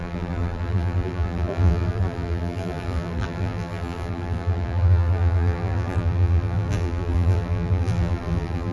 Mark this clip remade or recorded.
remade